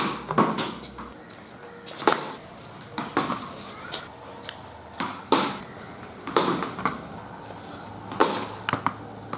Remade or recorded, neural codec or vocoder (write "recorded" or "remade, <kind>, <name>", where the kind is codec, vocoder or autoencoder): recorded